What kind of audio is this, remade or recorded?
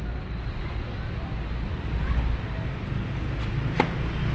recorded